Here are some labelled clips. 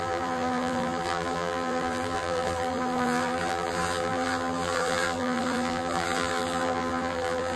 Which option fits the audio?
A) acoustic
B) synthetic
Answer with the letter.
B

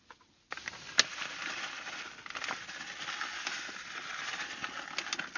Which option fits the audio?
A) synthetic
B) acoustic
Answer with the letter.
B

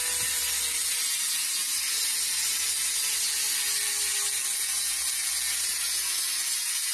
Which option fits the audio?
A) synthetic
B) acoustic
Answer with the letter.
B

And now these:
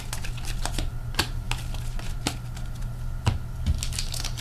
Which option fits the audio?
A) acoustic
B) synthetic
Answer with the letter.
A